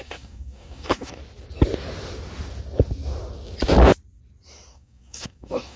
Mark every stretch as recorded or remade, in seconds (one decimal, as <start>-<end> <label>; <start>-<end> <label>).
0.0-1.2 remade; 1.2-4.7 recorded; 4.7-5.8 remade